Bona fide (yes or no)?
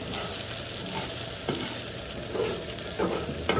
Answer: yes